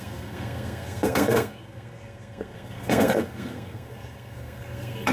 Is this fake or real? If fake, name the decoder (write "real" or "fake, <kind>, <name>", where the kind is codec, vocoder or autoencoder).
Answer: fake, codec, SNAC